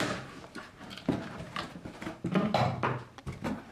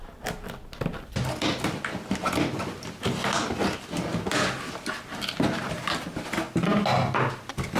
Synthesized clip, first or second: first